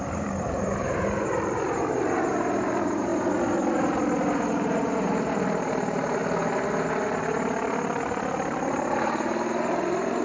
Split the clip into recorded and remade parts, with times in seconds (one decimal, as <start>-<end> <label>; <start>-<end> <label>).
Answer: 0.0-3.1 remade; 3.1-3.7 recorded; 3.7-6.2 remade; 6.2-8.0 recorded; 8.0-10.2 remade